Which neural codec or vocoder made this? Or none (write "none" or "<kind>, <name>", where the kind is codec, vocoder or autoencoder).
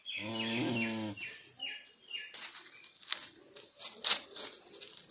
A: none